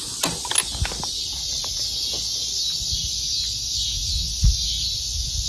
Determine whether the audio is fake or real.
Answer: real